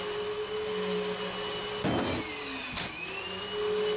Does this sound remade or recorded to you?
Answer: recorded